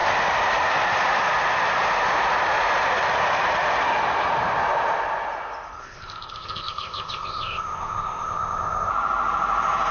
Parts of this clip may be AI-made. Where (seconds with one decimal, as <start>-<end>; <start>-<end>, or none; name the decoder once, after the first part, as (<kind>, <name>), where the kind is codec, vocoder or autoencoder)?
5.8-8.9 (codec, ZipCodec)